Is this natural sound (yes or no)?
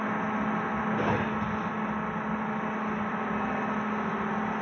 yes